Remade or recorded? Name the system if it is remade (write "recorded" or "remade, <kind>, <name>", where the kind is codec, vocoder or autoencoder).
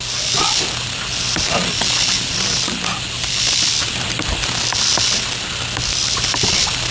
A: recorded